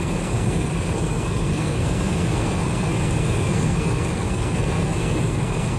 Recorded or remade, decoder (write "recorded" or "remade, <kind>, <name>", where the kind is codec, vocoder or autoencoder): remade, codec, SNAC